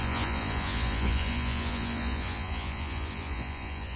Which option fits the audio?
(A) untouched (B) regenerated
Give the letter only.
B